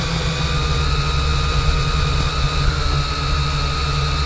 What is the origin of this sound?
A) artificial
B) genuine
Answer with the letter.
B